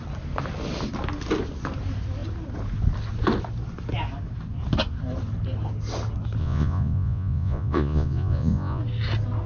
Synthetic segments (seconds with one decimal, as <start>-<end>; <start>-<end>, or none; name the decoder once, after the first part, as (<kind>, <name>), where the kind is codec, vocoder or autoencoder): 6.4-8.8 (vocoder, Vocos)